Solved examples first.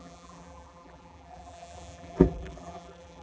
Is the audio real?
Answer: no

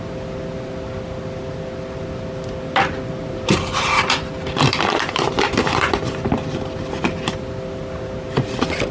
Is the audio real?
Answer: yes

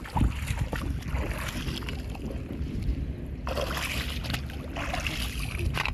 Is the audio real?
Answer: yes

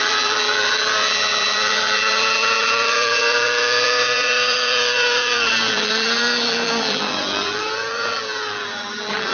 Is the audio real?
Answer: no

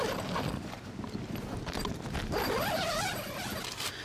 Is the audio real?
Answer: no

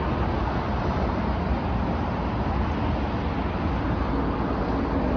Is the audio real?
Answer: yes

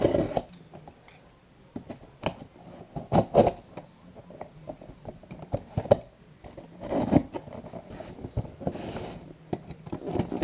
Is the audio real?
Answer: yes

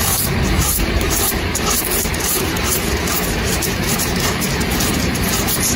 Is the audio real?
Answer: no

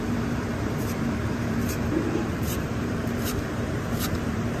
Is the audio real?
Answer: no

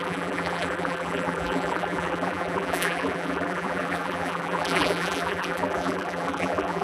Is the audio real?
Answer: no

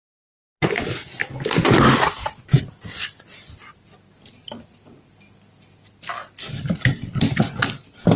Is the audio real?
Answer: yes